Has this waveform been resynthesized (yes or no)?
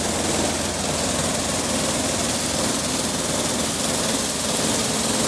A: no